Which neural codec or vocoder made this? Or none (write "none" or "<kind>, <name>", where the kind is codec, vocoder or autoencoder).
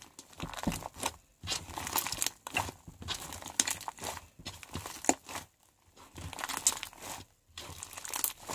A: none